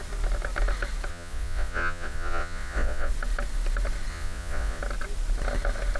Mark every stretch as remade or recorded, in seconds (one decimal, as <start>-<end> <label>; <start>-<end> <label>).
0.0-1.1 recorded; 1.1-3.1 remade; 3.1-4.1 recorded; 4.1-4.8 remade; 4.8-6.0 recorded

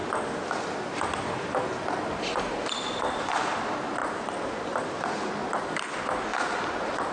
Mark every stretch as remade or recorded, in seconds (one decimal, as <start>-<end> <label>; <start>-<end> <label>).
0.0-7.1 recorded

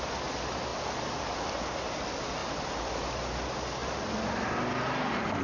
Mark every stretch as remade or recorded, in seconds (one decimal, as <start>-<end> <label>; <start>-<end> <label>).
0.0-2.4 recorded; 2.4-3.1 remade; 3.1-5.4 recorded

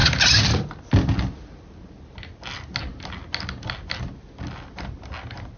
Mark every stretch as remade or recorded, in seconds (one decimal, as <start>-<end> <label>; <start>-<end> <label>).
0.0-5.6 recorded